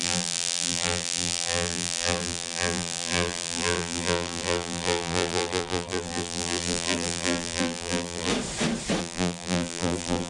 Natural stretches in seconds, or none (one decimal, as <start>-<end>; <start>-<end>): 8.3-9.0